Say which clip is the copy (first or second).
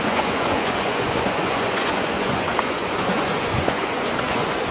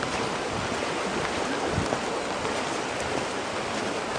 first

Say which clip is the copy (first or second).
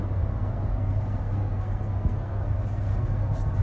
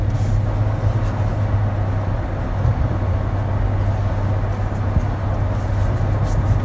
first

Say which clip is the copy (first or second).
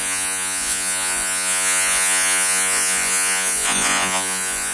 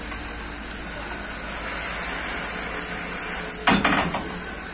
first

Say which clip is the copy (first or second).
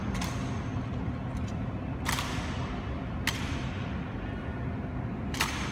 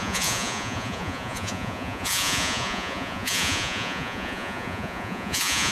second